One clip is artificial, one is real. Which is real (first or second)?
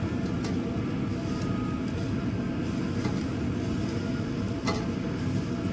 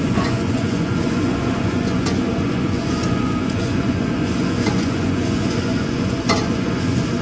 first